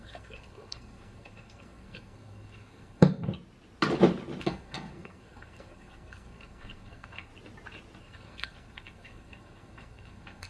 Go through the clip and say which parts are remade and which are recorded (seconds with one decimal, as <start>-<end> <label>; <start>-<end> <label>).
0.0-3.3 remade; 3.3-4.4 recorded; 4.4-7.3 remade; 7.3-8.0 recorded; 8.0-10.5 remade